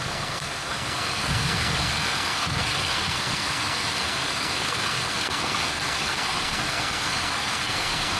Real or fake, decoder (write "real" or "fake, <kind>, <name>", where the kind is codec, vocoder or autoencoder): fake, codec, SNAC